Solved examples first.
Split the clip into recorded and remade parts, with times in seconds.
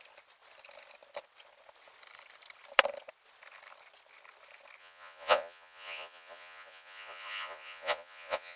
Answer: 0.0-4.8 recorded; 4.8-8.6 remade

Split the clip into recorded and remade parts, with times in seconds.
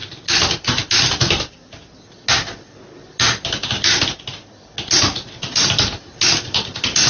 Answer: 0.0-7.1 recorded